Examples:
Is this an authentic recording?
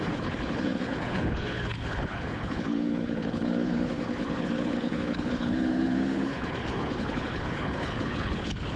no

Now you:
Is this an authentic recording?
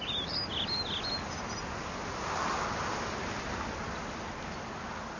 yes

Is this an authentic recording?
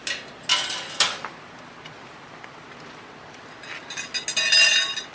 yes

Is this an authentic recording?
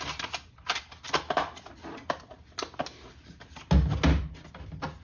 yes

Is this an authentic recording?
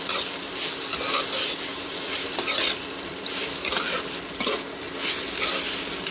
yes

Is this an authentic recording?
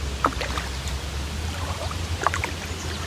yes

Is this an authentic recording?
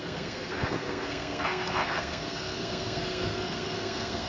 no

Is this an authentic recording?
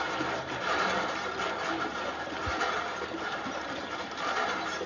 no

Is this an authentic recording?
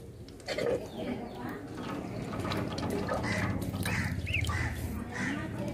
yes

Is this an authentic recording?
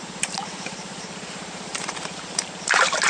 no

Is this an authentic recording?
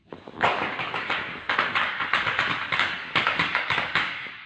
no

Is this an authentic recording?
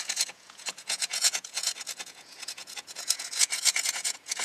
no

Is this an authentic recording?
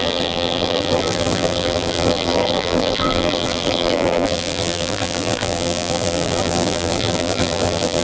no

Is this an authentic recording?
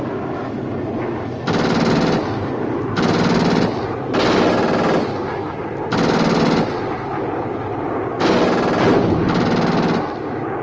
yes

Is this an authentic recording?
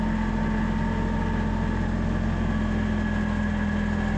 yes